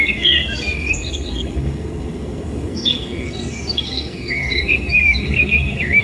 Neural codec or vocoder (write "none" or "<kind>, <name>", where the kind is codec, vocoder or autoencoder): codec, SNAC